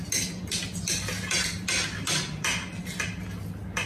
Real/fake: real